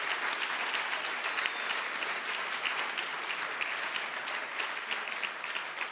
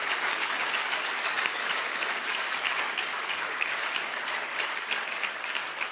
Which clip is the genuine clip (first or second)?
first